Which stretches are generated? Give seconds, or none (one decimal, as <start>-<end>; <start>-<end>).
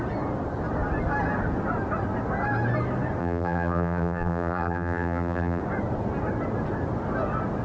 3.2-5.6